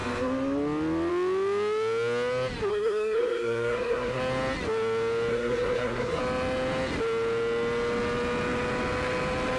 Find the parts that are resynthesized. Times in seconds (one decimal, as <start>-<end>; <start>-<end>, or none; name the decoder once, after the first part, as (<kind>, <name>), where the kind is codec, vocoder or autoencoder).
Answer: 2.7-4.2 (codec, SNAC); 5.3-6.2